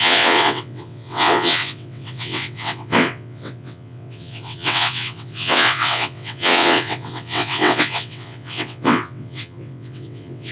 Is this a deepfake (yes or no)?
yes